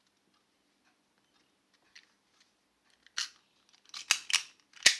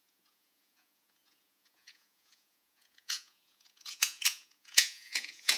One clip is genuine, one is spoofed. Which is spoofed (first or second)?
second